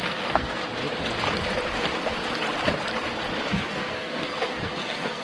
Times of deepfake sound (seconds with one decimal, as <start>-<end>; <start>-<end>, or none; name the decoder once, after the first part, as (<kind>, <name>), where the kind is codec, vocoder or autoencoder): 0.0-0.6 (codec, SNAC); 3.5-5.2